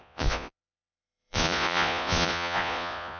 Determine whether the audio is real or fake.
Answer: fake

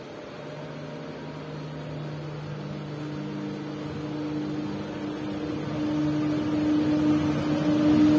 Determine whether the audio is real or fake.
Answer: real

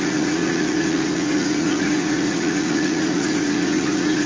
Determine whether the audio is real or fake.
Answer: fake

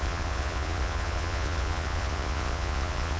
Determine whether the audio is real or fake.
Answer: fake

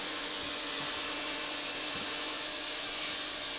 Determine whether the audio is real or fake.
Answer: fake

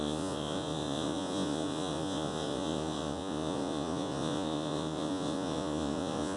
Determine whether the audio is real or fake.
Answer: fake